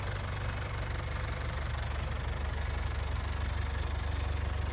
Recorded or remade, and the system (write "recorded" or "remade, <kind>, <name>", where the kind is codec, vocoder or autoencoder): recorded